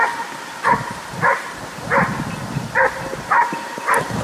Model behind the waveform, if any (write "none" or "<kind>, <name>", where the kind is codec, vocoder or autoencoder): vocoder, BigVGAN v2